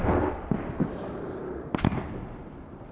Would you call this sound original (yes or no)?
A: yes